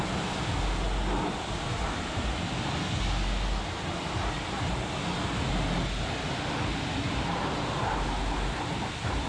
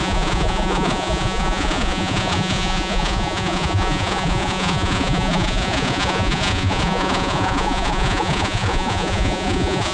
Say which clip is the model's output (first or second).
second